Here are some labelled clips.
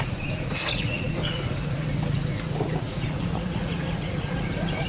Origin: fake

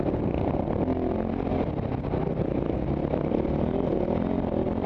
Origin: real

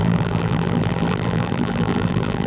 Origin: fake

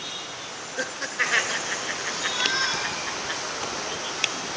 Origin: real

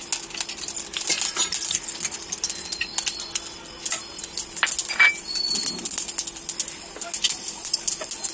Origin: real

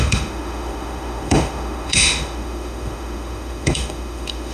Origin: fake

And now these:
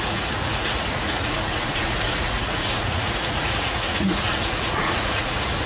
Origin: fake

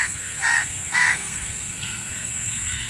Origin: fake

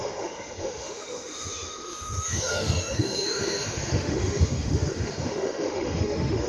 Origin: fake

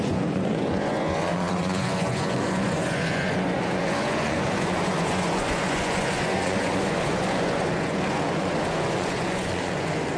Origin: fake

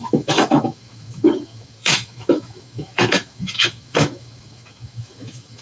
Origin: fake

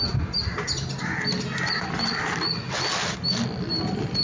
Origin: real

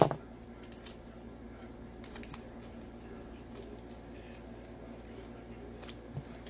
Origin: real